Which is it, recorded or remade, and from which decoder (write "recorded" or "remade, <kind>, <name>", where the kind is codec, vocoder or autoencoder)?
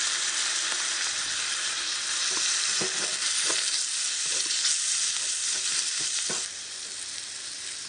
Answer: recorded